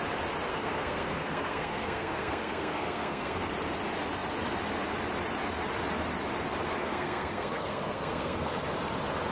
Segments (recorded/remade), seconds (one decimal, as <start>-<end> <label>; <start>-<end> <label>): 0.0-0.5 recorded; 0.5-3.5 remade; 3.5-6.8 recorded; 6.8-8.5 remade; 8.5-9.3 recorded